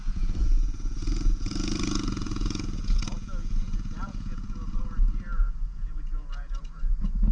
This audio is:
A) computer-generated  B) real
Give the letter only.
A